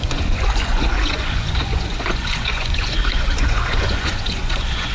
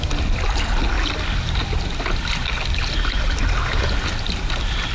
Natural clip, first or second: second